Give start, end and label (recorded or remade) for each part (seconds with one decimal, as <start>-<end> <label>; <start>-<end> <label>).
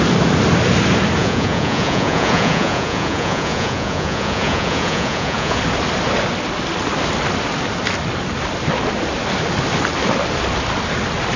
0.0-1.2 recorded; 1.2-5.6 remade; 5.6-11.4 recorded